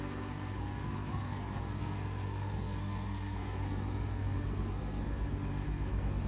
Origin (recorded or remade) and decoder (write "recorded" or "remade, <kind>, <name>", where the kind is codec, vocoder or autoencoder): remade, codec, SNAC